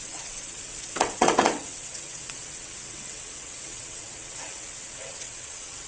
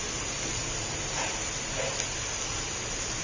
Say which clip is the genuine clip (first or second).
second